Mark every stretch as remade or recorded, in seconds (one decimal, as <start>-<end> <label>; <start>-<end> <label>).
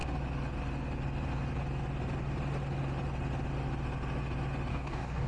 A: 0.0-4.7 recorded; 4.7-5.3 remade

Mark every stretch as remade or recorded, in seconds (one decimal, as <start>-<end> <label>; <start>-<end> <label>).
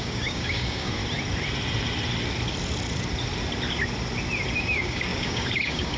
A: 0.0-1.0 remade; 1.0-4.6 recorded; 4.6-6.0 remade